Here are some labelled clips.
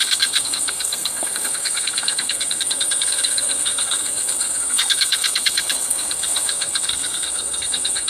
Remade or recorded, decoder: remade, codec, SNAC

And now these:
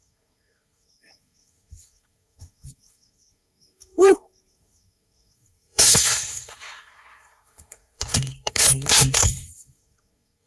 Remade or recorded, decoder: remade, codec, SNAC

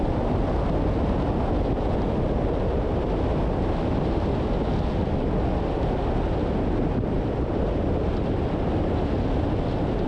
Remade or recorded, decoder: recorded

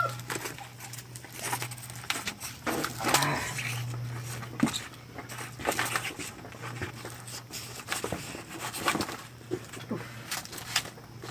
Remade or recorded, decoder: recorded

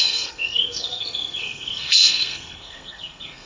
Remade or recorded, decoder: remade, codec, SNAC